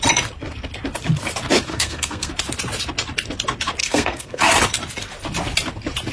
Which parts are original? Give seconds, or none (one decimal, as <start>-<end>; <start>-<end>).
0.0-1.7; 2.3-3.8; 4.4-6.1